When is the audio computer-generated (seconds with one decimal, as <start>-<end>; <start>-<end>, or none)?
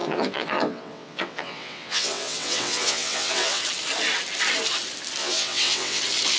0.0-3.6; 5.2-6.0